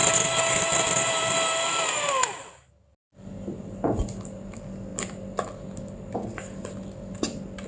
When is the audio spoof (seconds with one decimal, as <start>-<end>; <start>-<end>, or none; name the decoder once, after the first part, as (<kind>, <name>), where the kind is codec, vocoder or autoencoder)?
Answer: none